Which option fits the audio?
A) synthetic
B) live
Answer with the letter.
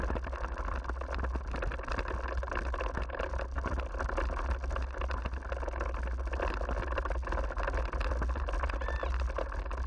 B